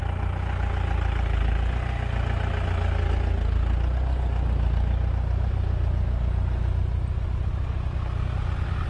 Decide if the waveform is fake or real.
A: real